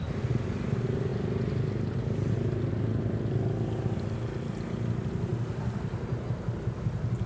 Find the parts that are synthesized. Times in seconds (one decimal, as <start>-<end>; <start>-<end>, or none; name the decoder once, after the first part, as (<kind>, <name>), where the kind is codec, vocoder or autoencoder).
none

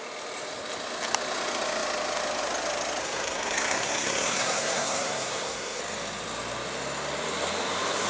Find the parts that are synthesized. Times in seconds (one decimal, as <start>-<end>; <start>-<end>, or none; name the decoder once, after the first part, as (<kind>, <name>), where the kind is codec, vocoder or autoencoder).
3.0-5.8 (codec, SNAC)

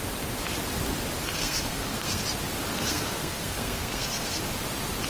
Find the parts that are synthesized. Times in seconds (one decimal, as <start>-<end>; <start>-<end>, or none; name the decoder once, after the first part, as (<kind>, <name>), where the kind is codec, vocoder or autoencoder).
1.4-2.2 (codec, SNAC); 2.7-4.4

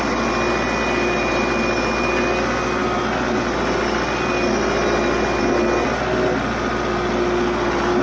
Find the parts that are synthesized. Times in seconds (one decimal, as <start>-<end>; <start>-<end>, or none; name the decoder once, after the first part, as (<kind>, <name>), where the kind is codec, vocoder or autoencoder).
none

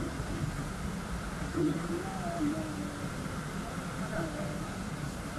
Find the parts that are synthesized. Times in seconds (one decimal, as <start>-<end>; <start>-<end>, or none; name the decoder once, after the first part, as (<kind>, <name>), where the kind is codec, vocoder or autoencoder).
0.0-0.7 (codec, SNAC); 1.4-1.9; 4.6-5.4

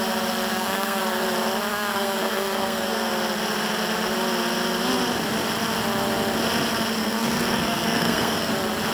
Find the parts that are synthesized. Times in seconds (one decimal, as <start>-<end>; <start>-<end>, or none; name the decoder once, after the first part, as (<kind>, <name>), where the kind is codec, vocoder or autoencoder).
0.5-1.0 (codec, SNAC); 1.7-3.1; 7.0-8.5